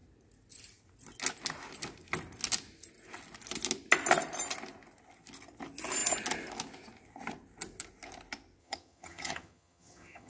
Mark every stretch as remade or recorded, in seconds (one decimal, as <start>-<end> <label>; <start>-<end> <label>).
0.0-8.6 recorded; 8.6-10.3 remade